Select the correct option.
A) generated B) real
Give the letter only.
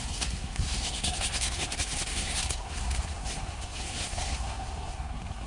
A